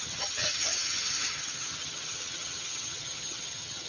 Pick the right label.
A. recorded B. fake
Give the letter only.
B